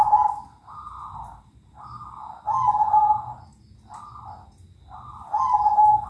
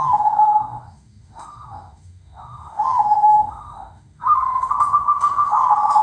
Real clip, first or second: first